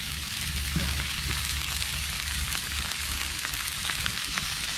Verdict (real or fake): fake